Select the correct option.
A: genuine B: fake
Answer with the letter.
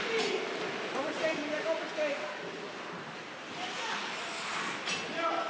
A